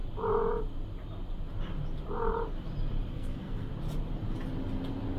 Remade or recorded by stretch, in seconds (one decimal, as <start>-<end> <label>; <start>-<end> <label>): 0.0-3.1 recorded; 3.1-3.7 remade; 3.7-5.2 recorded

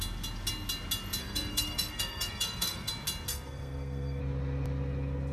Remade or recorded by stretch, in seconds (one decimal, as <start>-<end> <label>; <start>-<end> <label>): 0.0-1.2 recorded; 1.2-2.9 remade; 2.9-3.3 recorded; 3.3-4.2 remade; 4.2-5.3 recorded

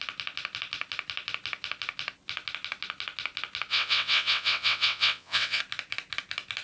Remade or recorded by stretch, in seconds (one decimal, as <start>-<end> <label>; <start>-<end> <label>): 0.0-3.7 recorded; 3.7-5.6 remade; 5.6-6.6 recorded

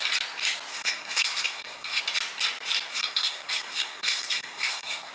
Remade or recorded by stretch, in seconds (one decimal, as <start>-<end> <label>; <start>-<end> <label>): 0.0-0.7 recorded; 0.7-2.0 remade; 2.0-2.9 recorded; 2.9-5.1 remade

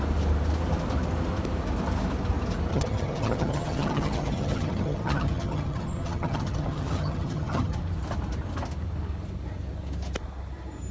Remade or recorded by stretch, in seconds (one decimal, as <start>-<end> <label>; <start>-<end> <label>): 0.0-2.7 recorded; 2.7-7.8 remade; 7.8-10.9 recorded

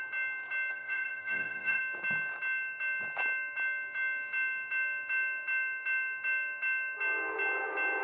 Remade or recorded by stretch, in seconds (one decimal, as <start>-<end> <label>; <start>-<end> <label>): 0.0-0.7 recorded; 0.7-1.8 remade; 1.8-8.0 recorded

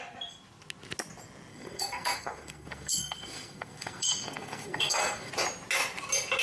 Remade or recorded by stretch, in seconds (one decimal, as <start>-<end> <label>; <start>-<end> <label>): 0.0-1.5 recorded; 1.5-5.3 remade; 5.3-6.4 recorded

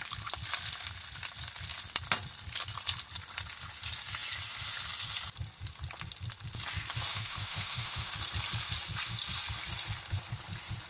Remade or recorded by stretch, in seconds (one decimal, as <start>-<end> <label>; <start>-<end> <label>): 0.0-7.1 recorded; 7.1-8.1 remade; 8.1-10.9 recorded